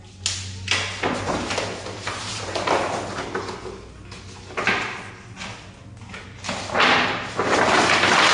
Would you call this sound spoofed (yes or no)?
no